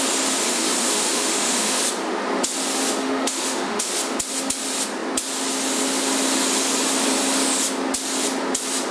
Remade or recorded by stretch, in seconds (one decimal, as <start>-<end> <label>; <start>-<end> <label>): 0.0-0.8 recorded; 0.8-1.8 remade; 1.8-3.0 recorded; 3.0-3.9 remade; 3.9-8.9 recorded